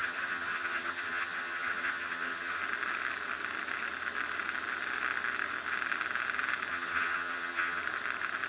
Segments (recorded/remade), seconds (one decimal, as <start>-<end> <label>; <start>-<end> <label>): 0.0-2.6 remade; 2.6-6.7 recorded; 6.7-7.8 remade; 7.8-8.5 recorded